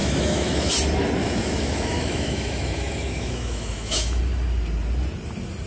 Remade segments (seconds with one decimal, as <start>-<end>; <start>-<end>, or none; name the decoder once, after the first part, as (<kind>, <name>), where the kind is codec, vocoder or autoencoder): 0.0-0.7 (autoencoder, DAC-VAE); 1.2-4.2